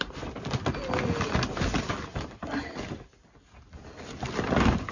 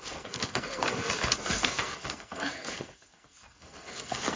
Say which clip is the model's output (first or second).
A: second